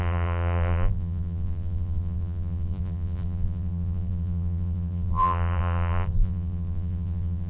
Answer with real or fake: fake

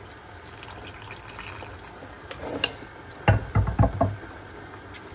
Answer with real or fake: real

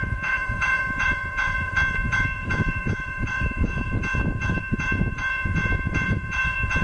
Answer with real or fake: fake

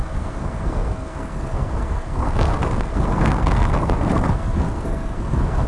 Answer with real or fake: fake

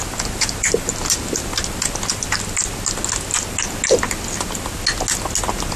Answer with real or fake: real